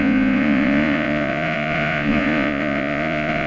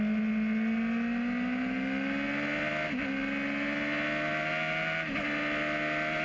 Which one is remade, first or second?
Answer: first